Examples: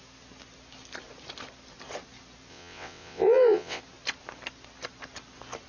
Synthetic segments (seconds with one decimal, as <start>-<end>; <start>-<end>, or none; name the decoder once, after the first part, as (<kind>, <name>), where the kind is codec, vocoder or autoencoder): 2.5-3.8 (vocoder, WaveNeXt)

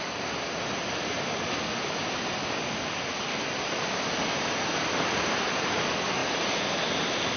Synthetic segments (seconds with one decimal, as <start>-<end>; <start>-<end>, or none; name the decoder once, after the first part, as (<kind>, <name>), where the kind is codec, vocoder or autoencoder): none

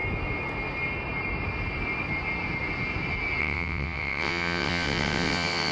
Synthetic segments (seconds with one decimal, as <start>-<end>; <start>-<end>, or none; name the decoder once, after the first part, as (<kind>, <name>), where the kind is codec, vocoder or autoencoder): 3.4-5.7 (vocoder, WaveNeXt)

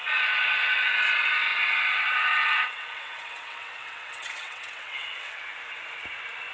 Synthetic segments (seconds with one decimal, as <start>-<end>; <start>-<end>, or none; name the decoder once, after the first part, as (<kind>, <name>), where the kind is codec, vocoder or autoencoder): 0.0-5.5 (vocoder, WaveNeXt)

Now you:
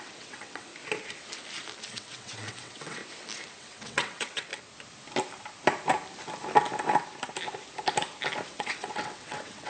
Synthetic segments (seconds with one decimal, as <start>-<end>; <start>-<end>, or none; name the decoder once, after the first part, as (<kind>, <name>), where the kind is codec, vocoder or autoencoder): 0.0-0.7 (vocoder, WaveNeXt); 1.9-3.0; 3.5-4.5; 8.5-9.7

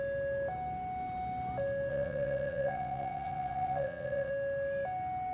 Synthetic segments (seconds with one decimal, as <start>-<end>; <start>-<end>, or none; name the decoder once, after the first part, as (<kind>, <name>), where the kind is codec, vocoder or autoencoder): 1.9-4.3 (vocoder, WaveNeXt)

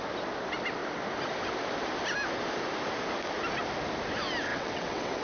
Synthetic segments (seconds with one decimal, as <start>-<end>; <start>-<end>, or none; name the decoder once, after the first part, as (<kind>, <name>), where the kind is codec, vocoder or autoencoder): 4.5-5.2 (vocoder, WaveNeXt)